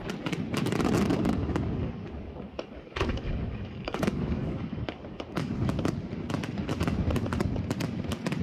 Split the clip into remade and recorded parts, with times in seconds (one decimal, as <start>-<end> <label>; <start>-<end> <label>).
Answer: 0.0-1.1 recorded; 1.1-5.7 remade; 5.7-8.4 recorded